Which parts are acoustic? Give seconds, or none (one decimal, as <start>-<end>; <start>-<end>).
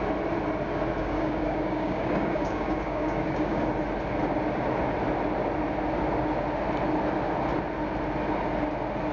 0.0-1.0; 3.6-9.1